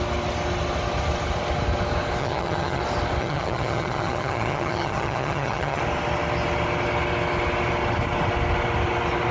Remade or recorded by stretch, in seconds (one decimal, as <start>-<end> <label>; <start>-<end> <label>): 0.0-2.2 recorded; 2.2-2.8 remade; 2.8-3.2 recorded; 3.2-5.8 remade; 5.8-9.3 recorded